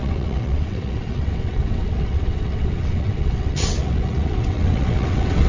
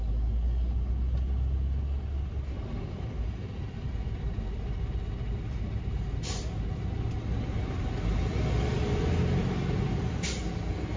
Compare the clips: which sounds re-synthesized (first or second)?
first